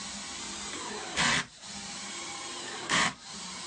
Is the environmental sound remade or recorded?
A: remade